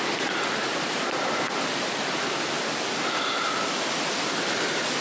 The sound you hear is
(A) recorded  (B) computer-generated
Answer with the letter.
A